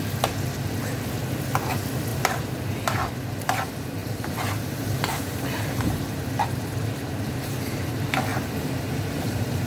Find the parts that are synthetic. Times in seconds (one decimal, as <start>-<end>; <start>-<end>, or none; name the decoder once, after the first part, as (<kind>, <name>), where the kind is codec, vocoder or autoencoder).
2.1-3.1 (vocoder, BigVGAN v2); 4.0-7.8; 8.3-9.7